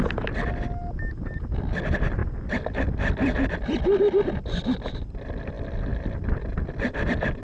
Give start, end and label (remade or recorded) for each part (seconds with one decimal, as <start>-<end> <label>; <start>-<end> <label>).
0.0-7.4 recorded